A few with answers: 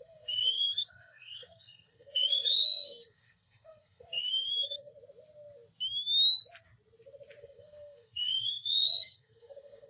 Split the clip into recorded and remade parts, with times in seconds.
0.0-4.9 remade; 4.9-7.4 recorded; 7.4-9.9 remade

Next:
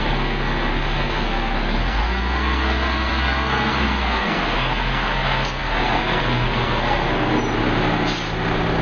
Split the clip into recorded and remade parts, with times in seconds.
0.0-7.3 remade; 7.3-8.8 recorded

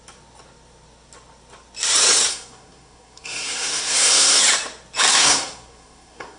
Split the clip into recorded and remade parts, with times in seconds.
0.0-2.3 recorded; 2.3-4.4 remade; 4.4-5.1 recorded; 5.1-6.4 remade